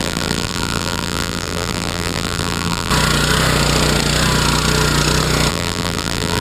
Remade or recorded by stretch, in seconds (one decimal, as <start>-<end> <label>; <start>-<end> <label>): 0.0-2.9 remade; 2.9-5.5 recorded; 5.5-6.4 remade